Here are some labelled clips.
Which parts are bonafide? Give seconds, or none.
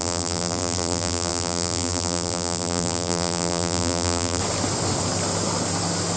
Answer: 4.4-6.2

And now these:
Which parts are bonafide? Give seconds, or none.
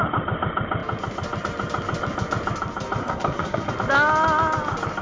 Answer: 0.0-3.0; 3.7-5.0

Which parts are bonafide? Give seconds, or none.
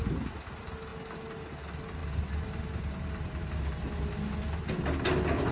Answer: 0.0-5.5